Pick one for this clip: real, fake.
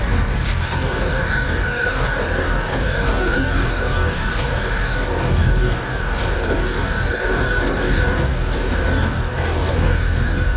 fake